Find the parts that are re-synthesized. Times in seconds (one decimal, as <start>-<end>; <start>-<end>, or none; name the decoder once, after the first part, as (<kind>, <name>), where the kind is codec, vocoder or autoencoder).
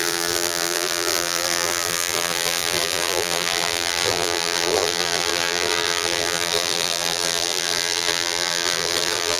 0.0-9.4 (vocoder, BigVGAN v2)